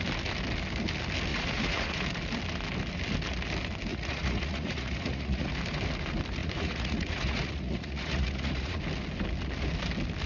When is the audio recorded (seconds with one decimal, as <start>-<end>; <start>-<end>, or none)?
0.0-1.3; 2.0-3.9; 5.5-6.4; 8.8-10.3